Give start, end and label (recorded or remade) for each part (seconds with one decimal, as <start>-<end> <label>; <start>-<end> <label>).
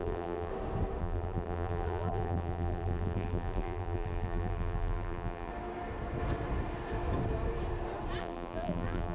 0.0-0.5 remade; 0.5-1.0 recorded; 1.0-5.5 remade; 5.5-8.2 recorded; 8.2-9.1 remade